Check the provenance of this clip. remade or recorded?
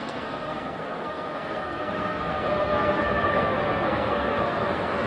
remade